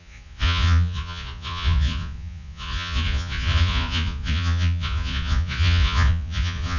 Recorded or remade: remade